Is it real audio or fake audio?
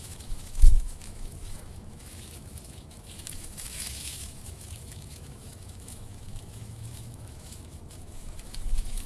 fake